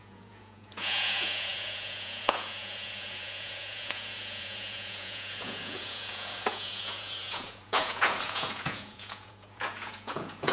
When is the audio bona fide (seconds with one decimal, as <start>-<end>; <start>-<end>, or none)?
none